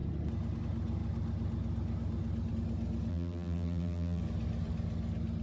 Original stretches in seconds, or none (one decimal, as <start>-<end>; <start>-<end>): 0.0-3.1; 4.2-5.4